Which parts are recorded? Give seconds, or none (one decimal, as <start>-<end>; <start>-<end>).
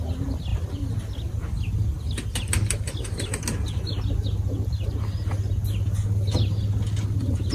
0.0-7.5